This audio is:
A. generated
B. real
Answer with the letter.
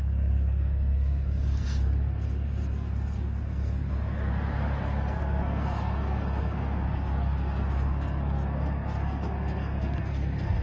A